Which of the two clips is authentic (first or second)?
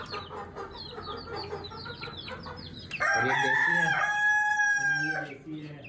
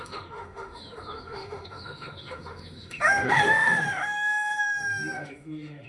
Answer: first